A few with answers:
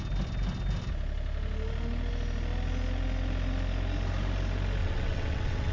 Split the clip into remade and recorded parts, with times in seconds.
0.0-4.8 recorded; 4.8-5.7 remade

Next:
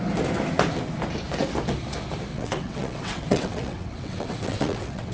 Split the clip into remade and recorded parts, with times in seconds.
0.0-2.3 recorded; 2.3-5.1 remade

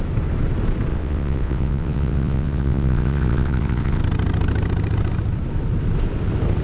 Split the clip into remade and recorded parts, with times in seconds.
0.0-0.9 recorded; 0.9-4.0 remade; 4.0-6.6 recorded